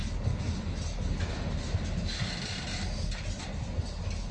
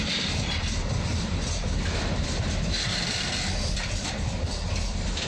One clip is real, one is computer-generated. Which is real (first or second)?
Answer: first